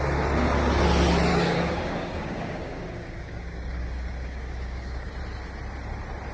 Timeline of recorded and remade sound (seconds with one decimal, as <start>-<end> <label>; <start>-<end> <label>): 0.0-1.3 recorded; 1.3-5.1 remade; 5.1-6.3 recorded